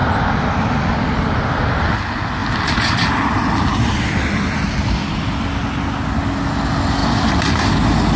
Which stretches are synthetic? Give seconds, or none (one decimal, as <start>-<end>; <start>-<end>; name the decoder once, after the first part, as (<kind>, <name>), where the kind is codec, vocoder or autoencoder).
none